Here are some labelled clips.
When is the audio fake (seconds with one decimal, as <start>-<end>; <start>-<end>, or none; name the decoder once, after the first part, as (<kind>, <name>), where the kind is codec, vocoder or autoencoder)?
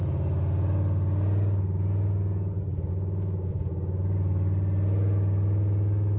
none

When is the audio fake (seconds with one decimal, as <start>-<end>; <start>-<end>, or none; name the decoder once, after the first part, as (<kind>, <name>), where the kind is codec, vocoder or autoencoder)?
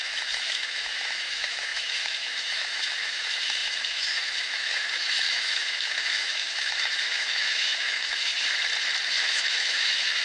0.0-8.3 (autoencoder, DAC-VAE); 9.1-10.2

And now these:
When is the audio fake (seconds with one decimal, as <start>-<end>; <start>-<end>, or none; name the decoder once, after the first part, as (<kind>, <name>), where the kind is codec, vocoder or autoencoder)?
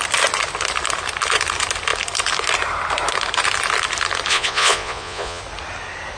4.3-5.4 (vocoder, Vocos)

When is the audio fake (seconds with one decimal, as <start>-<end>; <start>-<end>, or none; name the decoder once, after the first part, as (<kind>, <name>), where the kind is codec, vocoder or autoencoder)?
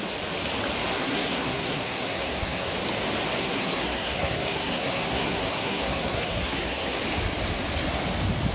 0.9-2.7 (codec, SNAC); 3.4-7.0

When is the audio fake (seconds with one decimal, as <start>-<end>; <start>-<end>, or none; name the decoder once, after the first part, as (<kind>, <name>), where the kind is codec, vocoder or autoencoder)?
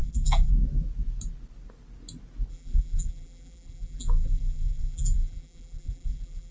0.0-0.5 (vocoder, BigVGAN v2); 2.5-6.5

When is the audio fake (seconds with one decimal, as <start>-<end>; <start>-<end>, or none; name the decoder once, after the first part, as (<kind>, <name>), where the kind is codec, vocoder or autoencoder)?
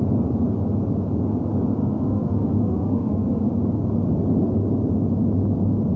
1.8-3.4 (autoencoder, DAC-VAE)